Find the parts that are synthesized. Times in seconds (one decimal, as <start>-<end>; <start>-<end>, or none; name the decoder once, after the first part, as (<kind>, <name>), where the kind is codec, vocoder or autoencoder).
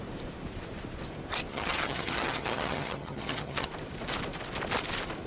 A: 1.5-3.7 (vocoder, HiFi-GAN)